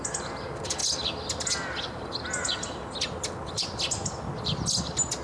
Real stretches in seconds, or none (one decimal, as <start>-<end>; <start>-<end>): 0.0-5.2